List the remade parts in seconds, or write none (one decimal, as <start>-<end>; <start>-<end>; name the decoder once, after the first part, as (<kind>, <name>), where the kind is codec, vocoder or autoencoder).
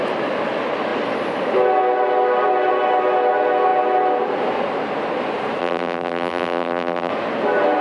5.6-7.1 (vocoder, BigVGAN v2)